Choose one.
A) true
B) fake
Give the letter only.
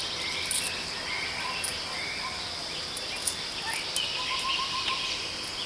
A